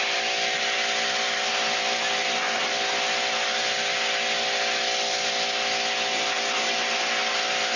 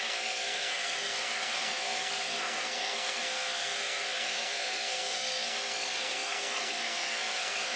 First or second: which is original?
first